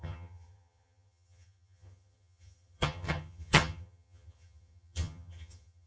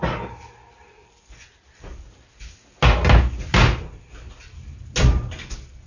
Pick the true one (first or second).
second